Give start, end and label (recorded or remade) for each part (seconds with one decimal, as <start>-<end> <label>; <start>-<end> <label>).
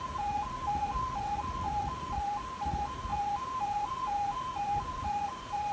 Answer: 0.0-5.7 remade